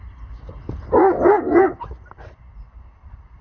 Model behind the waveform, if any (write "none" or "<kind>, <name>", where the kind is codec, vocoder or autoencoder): none